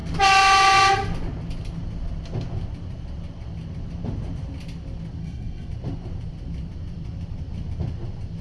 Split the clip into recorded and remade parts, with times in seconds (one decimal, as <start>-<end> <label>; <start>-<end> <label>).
0.0-5.2 recorded; 5.2-5.7 remade; 5.7-8.4 recorded